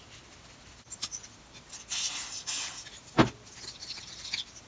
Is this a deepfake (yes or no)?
no